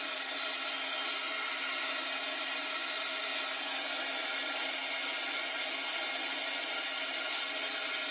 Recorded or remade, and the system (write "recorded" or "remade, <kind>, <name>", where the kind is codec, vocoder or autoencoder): recorded